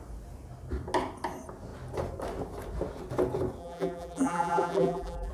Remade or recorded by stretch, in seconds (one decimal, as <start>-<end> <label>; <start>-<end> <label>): 0.0-3.6 recorded; 3.6-5.3 remade